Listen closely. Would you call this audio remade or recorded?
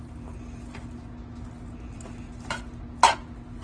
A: recorded